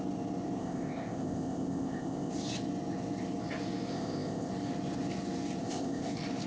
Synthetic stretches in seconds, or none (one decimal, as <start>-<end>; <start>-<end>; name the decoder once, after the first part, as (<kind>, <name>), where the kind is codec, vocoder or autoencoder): 0.6-2.3 (codec, ZipCodec); 3.9-4.5; 5.6-6.1